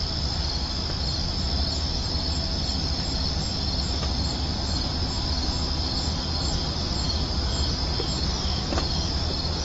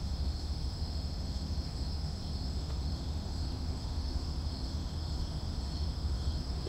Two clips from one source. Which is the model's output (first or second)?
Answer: second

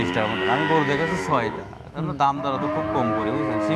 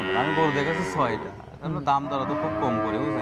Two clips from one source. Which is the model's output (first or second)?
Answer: first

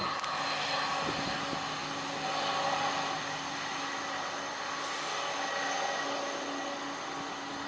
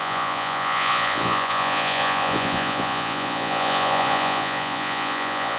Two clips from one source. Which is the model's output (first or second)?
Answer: second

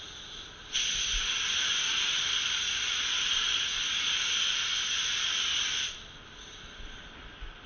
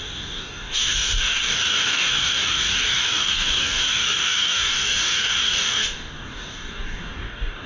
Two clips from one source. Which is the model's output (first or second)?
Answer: second